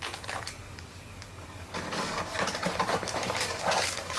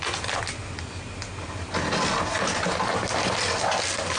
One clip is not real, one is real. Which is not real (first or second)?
first